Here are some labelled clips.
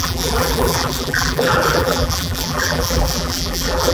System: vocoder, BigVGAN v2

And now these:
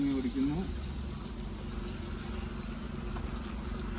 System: none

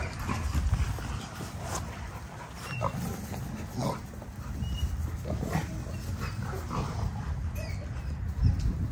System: none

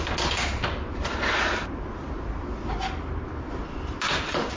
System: none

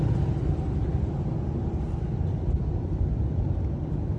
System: none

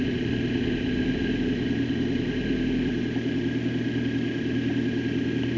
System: none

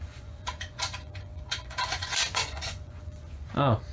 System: vocoder, Vocos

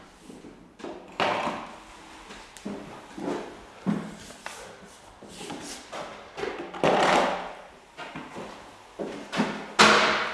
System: none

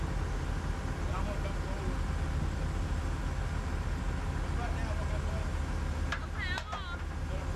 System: none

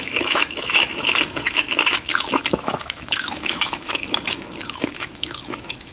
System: autoencoder, DAC-VAE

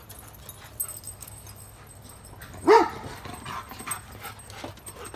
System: none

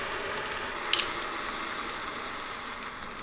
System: none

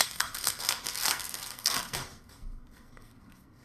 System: codec, SNAC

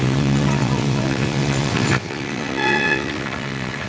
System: vocoder, WaveNeXt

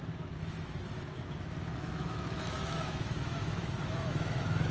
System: autoencoder, DAC-VAE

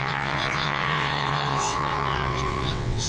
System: vocoder, WaveNeXt